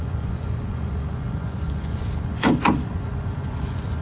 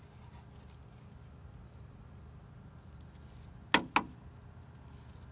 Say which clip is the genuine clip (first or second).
second